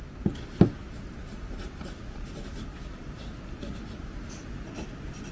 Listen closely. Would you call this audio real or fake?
fake